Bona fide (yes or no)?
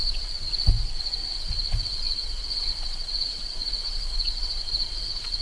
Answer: no